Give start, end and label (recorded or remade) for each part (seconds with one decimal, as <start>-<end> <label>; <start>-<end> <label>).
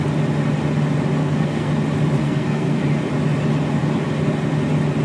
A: 0.0-1.2 recorded; 1.2-1.7 remade; 1.7-2.2 recorded; 2.2-2.8 remade; 2.8-5.0 recorded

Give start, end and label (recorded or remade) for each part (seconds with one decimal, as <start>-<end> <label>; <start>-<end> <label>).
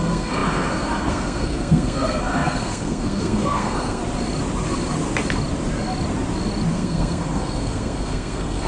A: 0.0-4.0 remade; 4.0-6.7 recorded; 6.7-8.7 remade